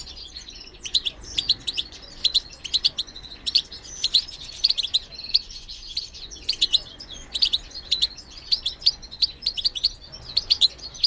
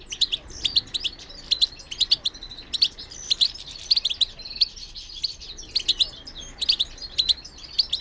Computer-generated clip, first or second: first